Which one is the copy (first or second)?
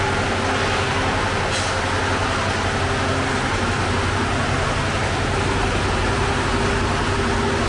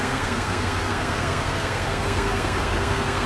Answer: second